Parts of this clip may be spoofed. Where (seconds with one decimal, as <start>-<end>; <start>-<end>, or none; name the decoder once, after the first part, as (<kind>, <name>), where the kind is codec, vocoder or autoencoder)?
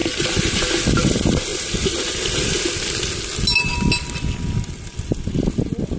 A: 1.5-2.6 (vocoder, BigVGAN v2)